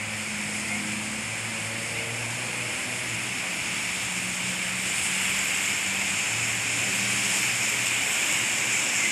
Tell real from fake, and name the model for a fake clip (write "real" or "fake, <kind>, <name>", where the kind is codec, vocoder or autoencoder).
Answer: real